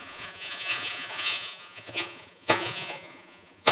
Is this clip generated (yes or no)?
yes